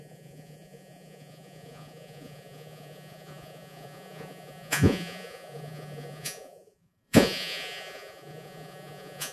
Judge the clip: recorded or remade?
remade